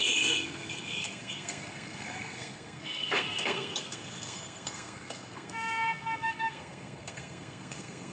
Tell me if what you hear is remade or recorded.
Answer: remade